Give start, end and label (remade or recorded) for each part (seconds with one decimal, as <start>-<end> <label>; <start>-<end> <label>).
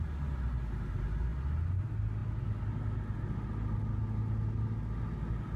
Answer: 0.0-5.6 recorded